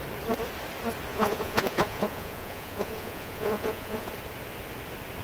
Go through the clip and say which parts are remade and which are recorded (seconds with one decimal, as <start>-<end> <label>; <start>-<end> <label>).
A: 0.0-1.1 recorded; 1.1-4.1 remade; 4.1-5.2 recorded